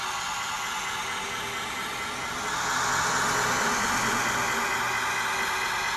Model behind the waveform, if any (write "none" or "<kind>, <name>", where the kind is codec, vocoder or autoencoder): none